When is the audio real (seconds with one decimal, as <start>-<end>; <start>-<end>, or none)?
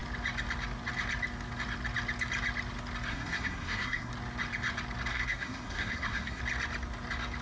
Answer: 0.0-3.1; 4.1-5.1; 6.4-7.4